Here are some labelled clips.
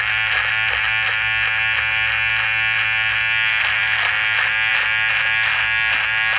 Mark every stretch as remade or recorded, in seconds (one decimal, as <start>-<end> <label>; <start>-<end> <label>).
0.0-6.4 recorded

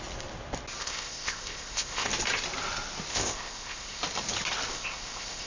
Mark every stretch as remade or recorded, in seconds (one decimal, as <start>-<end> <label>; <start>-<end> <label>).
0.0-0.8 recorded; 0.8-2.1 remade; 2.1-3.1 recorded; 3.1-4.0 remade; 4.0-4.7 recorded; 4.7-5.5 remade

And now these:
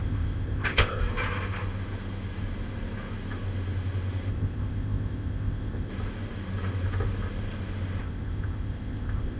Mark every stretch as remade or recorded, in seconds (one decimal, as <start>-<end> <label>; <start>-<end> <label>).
0.0-1.0 remade; 1.0-4.3 recorded; 4.3-5.9 remade; 5.9-8.0 recorded; 8.0-9.4 remade

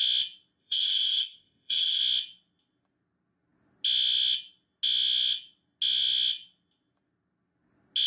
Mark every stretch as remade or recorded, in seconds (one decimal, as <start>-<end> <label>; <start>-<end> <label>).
0.0-0.6 recorded; 0.6-2.0 remade; 2.0-8.1 recorded

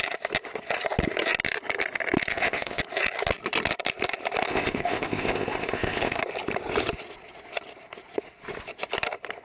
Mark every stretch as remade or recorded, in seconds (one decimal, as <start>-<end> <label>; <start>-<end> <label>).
0.0-2.3 recorded; 2.3-2.8 remade; 2.8-4.5 recorded; 4.5-6.2 remade; 6.2-9.4 recorded

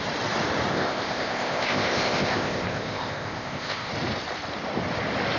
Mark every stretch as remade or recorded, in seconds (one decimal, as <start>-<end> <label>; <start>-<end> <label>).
0.0-0.7 recorded; 0.7-3.9 remade; 3.9-5.4 recorded